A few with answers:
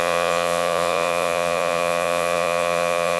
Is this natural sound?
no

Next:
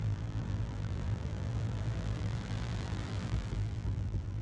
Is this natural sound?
no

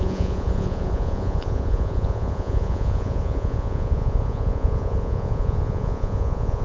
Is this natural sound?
no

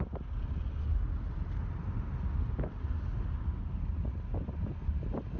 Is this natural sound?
yes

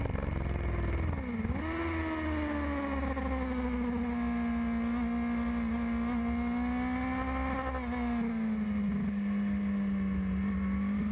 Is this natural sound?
yes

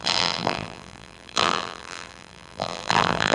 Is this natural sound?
no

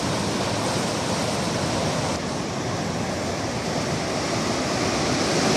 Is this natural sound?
yes